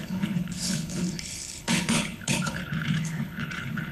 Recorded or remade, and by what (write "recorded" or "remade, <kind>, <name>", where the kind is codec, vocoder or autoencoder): remade, codec, HILCodec